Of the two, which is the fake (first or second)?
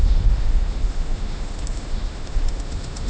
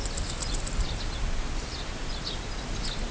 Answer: first